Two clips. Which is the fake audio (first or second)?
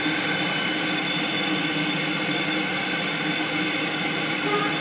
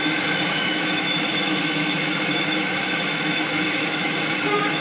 second